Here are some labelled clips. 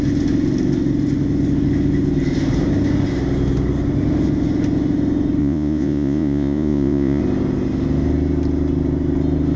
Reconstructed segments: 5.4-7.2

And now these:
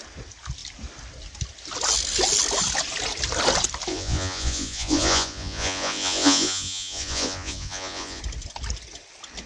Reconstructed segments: 3.9-8.2

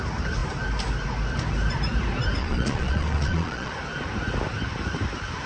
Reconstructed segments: 2.4-3.7

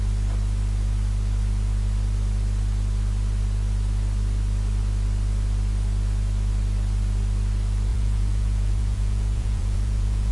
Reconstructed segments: 7.9-10.3

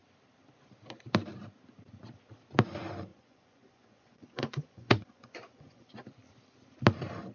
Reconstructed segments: 3.1-5.9

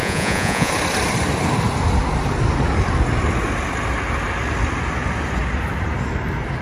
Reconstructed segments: 0.0-0.7